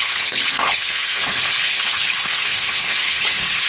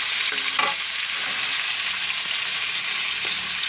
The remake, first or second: first